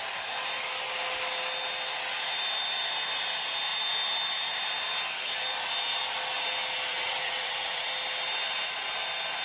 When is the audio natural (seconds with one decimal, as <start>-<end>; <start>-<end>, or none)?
0.0-6.9; 7.9-9.4